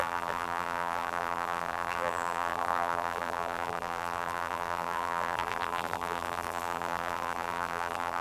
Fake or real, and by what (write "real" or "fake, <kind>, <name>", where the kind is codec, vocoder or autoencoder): fake, vocoder, BigVGAN v2